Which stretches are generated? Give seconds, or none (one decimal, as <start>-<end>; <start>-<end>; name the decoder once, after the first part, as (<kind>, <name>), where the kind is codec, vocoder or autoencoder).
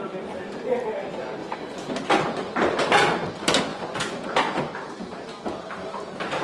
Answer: 1.4-1.9 (vocoder, Vocos); 3.7-4.2